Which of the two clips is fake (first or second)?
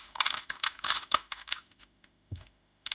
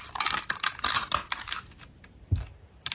first